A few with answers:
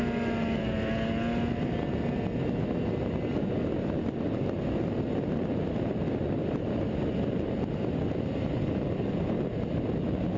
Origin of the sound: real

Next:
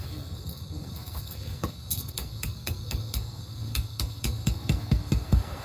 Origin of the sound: fake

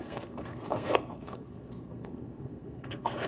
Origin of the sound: fake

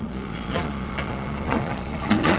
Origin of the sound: fake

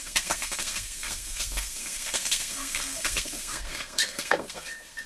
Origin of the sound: fake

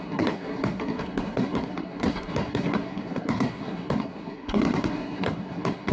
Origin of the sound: fake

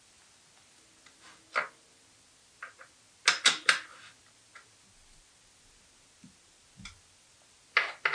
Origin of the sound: real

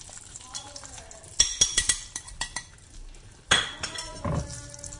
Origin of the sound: real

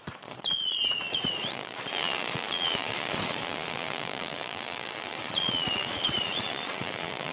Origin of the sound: fake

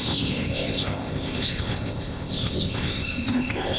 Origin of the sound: fake